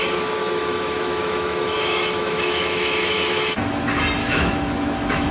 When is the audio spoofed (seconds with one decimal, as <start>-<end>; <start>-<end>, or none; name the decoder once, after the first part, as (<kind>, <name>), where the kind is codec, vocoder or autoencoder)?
0.4-3.6 (autoencoder, DAC-VAE); 4.2-5.3